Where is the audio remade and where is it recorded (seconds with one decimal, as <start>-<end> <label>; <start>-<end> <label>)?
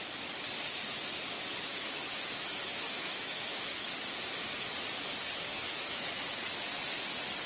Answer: 0.0-1.7 recorded; 1.7-4.0 remade; 4.0-5.5 recorded; 5.5-6.1 remade; 6.1-7.5 recorded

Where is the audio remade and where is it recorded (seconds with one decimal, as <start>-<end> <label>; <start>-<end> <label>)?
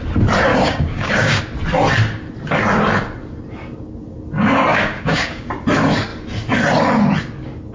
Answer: 0.0-0.5 recorded; 0.5-1.4 remade; 1.4-4.7 recorded; 4.7-5.5 remade; 5.5-7.7 recorded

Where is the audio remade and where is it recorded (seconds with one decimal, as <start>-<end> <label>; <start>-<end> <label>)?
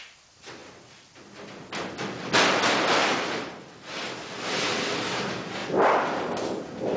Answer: 0.0-7.0 recorded